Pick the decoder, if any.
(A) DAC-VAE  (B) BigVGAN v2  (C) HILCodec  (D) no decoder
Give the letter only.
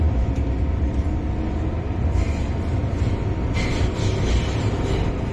D